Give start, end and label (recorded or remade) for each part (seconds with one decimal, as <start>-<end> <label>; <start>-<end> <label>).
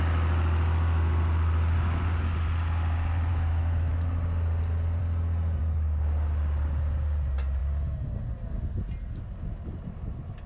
0.0-3.3 recorded; 3.3-3.9 remade; 3.9-10.5 recorded